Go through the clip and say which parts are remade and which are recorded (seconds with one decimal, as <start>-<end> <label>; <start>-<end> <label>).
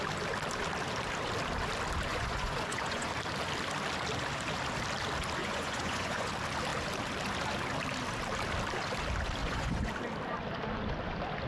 0.0-2.1 recorded; 2.1-3.1 remade; 3.1-5.4 recorded; 5.4-6.3 remade; 6.3-9.4 recorded; 9.4-9.9 remade; 9.9-11.5 recorded